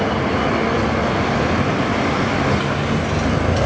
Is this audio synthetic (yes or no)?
no